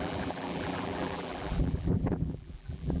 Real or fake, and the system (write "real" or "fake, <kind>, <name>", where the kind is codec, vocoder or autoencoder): fake, vocoder, BigVGAN v2